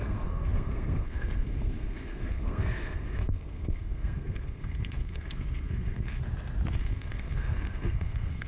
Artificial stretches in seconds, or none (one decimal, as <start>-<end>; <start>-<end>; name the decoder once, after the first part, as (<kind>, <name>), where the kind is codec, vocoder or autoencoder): 0.0-6.2 (codec, SNAC); 6.7-8.5